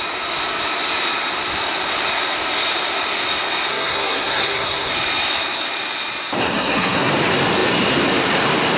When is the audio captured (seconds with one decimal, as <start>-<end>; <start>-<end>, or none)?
0.0-3.7; 4.9-6.4; 7.1-8.8